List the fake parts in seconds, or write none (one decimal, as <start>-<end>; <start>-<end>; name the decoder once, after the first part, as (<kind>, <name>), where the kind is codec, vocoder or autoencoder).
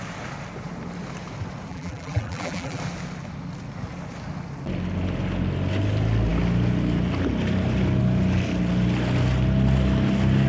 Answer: 1.7-2.8 (vocoder, BigVGAN v2)